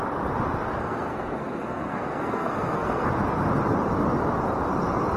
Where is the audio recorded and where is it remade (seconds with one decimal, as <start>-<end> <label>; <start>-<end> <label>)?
0.0-0.8 recorded; 0.8-3.1 remade; 3.1-5.2 recorded